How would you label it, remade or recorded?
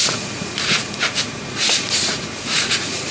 remade